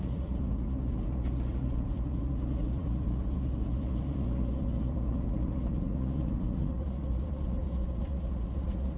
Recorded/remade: remade